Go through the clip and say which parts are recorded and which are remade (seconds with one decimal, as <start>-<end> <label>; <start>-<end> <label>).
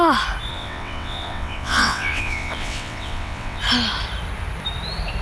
0.0-0.5 recorded; 0.5-3.6 remade; 3.6-5.2 recorded